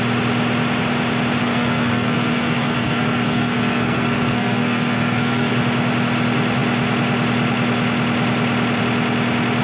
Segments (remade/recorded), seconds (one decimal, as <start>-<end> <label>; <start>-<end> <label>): 0.0-1.4 recorded; 1.4-5.5 remade; 5.5-9.6 recorded